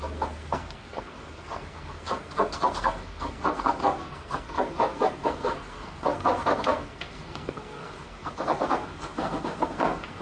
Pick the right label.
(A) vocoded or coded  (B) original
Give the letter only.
A